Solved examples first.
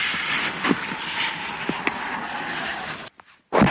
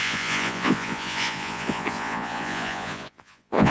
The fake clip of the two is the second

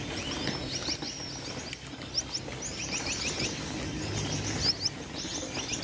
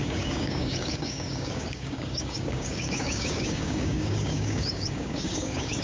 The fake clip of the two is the second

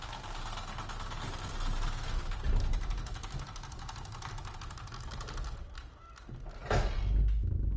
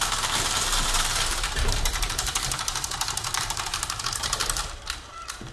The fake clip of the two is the second